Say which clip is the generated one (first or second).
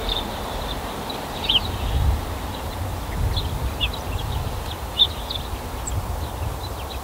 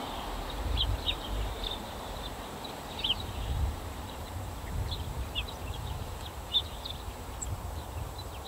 second